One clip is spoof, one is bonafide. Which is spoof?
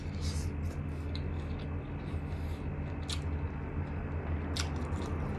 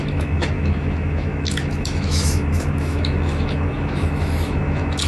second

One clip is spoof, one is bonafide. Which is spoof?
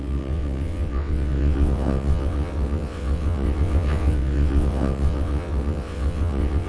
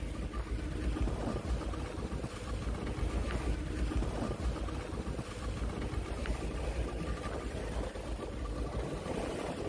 first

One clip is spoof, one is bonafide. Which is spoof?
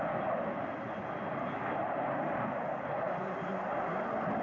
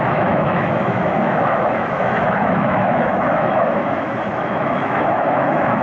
second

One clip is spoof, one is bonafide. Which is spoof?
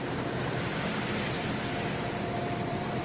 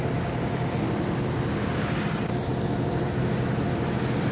first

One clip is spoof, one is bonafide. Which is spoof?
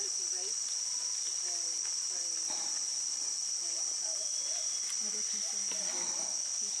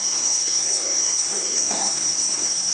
second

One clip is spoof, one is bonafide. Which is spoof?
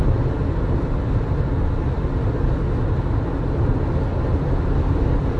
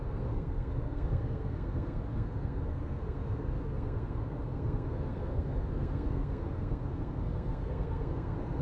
second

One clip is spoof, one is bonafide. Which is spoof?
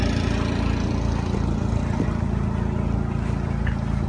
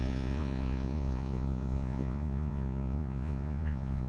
second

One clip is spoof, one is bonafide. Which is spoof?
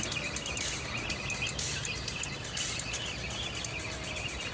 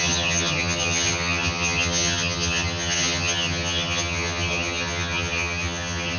second